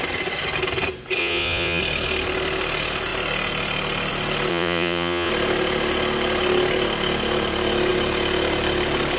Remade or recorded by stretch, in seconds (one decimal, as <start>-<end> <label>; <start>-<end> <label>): 0.0-1.2 recorded; 1.2-1.8 remade; 1.8-4.5 recorded; 4.5-5.3 remade; 5.3-9.2 recorded